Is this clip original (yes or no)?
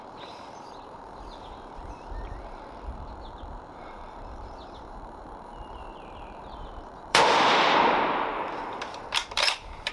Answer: no